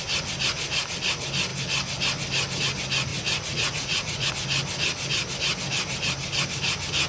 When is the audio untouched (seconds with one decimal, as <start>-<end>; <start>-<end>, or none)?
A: 0.0-3.1; 4.3-7.1